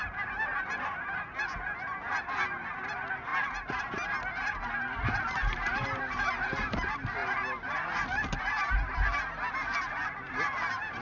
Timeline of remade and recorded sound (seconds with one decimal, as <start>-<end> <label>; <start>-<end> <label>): 0.0-11.0 recorded